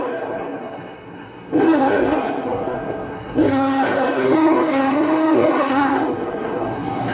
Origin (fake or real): fake